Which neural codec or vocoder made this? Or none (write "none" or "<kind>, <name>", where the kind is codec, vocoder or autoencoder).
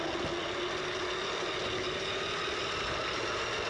none